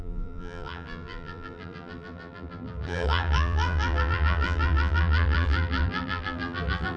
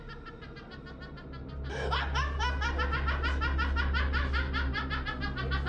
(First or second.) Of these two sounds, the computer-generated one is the first